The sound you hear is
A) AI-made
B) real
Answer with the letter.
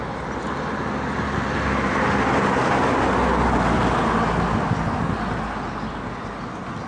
B